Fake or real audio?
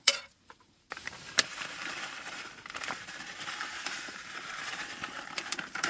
fake